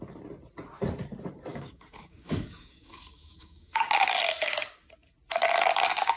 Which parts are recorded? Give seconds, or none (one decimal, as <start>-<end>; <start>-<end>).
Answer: 0.0-1.5; 3.9-6.2